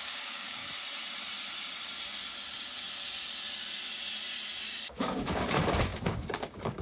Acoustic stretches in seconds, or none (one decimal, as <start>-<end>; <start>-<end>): 0.6-4.6